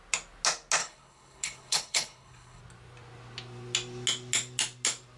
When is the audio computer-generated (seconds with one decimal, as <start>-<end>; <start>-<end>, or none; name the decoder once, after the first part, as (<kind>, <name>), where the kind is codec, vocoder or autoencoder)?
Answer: 0.8-2.6 (codec, HILCodec)

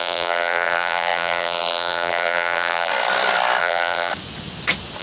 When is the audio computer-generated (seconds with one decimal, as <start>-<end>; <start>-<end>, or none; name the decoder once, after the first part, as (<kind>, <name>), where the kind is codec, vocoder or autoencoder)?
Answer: 0.0-2.9 (vocoder, BigVGAN v2); 3.6-4.1